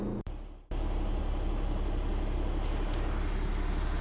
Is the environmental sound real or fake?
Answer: real